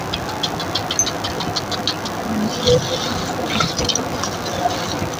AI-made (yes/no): no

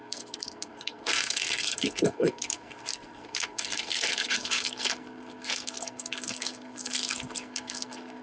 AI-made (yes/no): yes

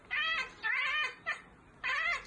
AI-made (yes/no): no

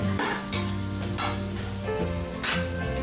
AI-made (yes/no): no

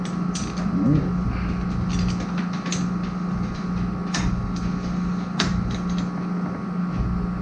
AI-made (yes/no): no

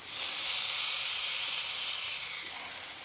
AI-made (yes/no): no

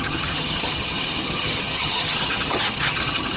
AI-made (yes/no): yes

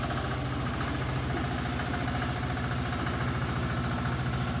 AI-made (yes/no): no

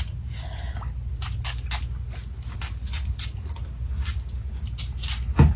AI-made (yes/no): no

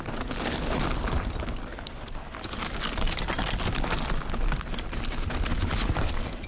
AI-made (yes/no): no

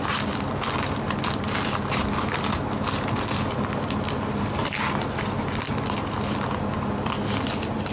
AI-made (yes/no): no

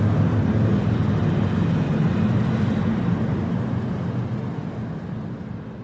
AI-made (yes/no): no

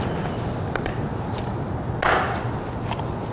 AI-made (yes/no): no